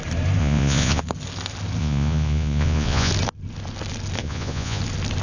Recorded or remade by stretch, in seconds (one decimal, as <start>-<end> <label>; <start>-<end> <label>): 0.0-0.4 recorded; 0.4-1.0 remade; 1.0-1.8 recorded; 1.8-3.1 remade; 3.1-4.2 recorded; 4.2-4.8 remade; 4.8-5.2 recorded